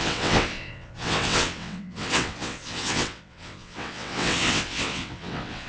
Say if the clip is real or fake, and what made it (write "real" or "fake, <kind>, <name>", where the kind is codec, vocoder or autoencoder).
fake, vocoder, WaveNeXt